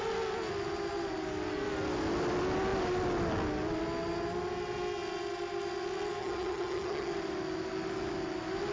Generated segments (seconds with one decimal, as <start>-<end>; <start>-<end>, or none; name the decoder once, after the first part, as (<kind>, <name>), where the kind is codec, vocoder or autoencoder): 6.2-7.1 (vocoder, HiFi-GAN)